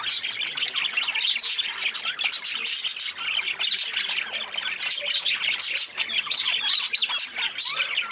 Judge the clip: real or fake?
real